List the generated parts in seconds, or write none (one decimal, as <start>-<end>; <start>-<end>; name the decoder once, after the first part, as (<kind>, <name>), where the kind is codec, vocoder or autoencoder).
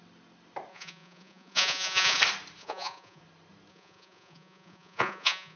0.7-2.2 (vocoder, Vocos); 2.6-3.2; 3.7-5.6